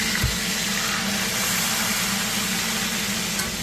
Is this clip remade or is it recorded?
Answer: recorded